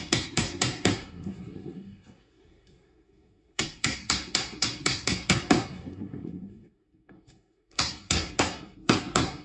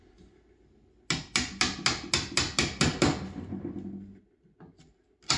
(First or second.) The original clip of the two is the second